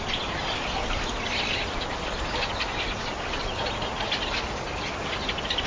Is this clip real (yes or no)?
yes